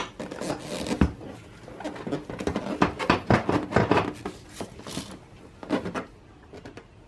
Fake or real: real